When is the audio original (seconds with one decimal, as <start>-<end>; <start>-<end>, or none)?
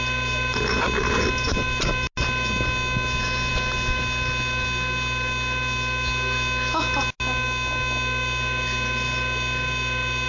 0.0-10.3